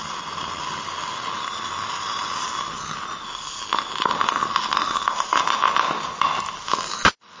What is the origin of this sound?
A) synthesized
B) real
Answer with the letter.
B